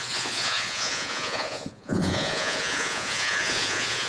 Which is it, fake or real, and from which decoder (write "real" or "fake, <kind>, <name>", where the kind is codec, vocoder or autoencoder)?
fake, vocoder, Vocos